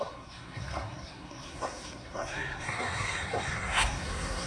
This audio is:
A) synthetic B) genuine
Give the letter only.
A